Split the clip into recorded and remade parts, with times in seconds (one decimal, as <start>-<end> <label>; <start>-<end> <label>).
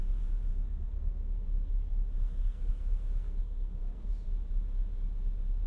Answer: 0.0-0.5 recorded; 0.5-1.7 remade; 1.7-2.2 recorded; 2.2-4.1 remade; 4.1-5.7 recorded